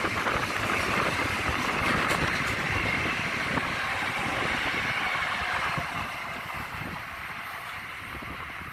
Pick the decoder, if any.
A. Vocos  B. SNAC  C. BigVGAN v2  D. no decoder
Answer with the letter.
D